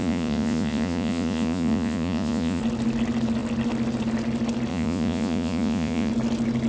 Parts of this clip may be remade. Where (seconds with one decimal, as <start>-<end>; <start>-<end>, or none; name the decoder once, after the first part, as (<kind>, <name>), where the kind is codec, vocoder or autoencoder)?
0.0-2.6 (vocoder, Vocos); 4.7-6.1